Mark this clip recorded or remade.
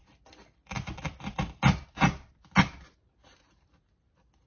recorded